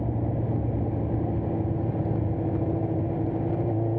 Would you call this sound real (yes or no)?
yes